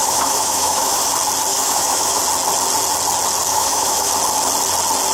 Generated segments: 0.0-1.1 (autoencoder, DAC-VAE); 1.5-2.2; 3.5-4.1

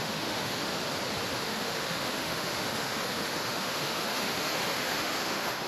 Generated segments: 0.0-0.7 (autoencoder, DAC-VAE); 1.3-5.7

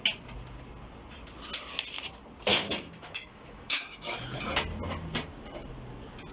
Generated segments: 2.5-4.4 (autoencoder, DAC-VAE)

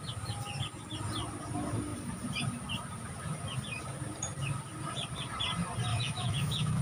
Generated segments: 5.9-6.8 (autoencoder, DAC-VAE)

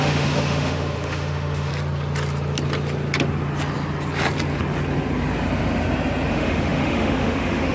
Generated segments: 0.0-1.7 (autoencoder, DAC-VAE); 6.3-7.7

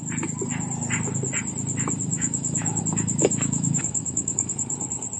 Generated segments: 2.1-2.8 (autoencoder, DAC-VAE); 3.2-4.5

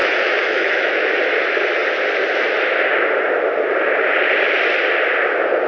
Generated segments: 0.0-1.2 (autoencoder, DAC-VAE)

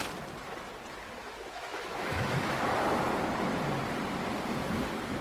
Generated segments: 1.2-2.8 (autoencoder, DAC-VAE)